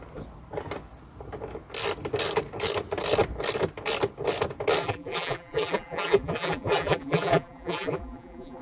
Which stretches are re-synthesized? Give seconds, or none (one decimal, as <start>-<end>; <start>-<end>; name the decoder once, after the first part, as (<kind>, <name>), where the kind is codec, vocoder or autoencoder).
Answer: 4.8-8.6 (vocoder, BigVGAN v2)

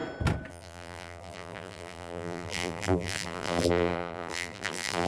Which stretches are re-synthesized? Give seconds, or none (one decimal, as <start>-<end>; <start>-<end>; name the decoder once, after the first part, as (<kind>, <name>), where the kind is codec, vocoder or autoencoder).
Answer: 0.5-5.1 (vocoder, BigVGAN v2)

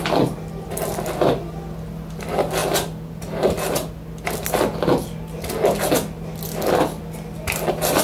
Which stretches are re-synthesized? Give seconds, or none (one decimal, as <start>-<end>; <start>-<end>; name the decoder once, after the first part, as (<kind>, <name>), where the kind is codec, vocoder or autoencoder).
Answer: none

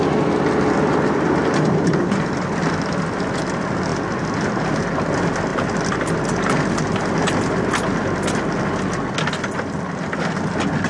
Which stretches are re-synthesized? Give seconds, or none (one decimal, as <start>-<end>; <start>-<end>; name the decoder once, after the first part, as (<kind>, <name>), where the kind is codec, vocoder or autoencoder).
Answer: none

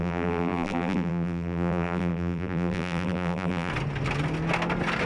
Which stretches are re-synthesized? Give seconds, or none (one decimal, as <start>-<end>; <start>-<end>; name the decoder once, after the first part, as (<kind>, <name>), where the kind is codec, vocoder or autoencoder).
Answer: 0.0-3.7 (vocoder, BigVGAN v2)

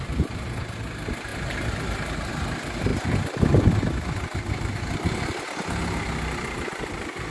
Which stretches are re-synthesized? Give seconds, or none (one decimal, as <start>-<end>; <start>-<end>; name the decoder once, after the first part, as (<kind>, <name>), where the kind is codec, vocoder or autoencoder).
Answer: 1.3-2.3 (vocoder, BigVGAN v2)

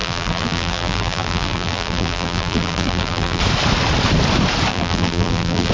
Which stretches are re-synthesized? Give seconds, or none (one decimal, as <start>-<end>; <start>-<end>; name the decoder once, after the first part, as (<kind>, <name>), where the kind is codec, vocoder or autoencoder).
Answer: 0.0-3.4 (vocoder, BigVGAN v2); 4.7-5.7

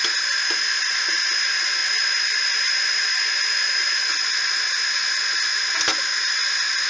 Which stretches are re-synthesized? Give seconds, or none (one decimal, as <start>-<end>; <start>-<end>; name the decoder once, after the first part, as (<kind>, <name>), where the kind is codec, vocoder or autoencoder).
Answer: none